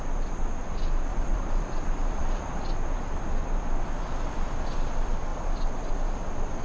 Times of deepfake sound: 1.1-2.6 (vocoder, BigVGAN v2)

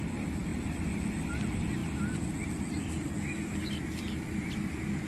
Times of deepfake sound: none

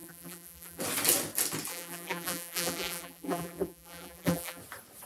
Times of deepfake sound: 0.0-0.8 (vocoder, BigVGAN v2); 1.7-4.6